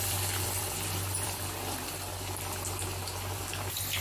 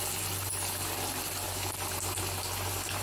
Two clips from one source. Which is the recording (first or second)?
second